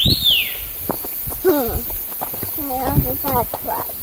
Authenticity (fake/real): real